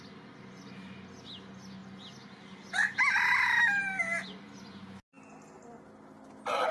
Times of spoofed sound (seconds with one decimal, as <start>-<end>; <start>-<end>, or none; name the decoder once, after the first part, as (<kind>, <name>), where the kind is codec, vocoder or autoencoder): none